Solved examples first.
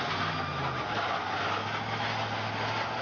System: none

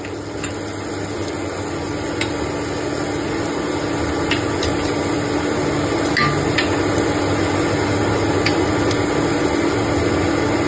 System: none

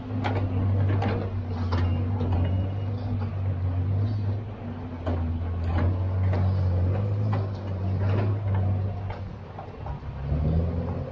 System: none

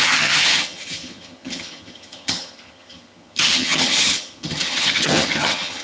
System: vocoder, HiFi-GAN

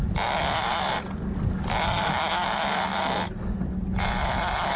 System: none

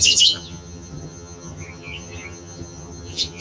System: vocoder, HiFi-GAN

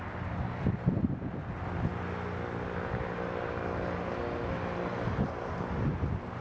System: none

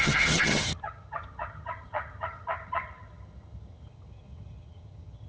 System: vocoder, HiFi-GAN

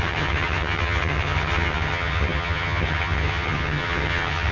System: vocoder, HiFi-GAN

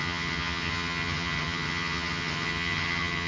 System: vocoder, HiFi-GAN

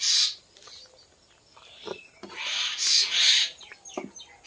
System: none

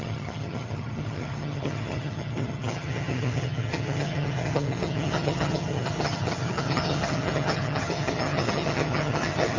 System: vocoder, HiFi-GAN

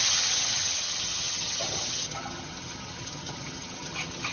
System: vocoder, HiFi-GAN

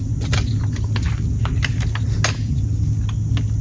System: none